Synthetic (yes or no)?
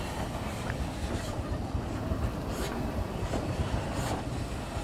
no